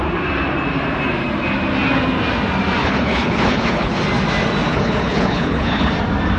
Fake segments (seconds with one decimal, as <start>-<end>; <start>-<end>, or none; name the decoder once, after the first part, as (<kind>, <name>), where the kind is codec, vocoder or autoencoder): 2.8-4.0 (codec, HILCodec); 4.7-5.9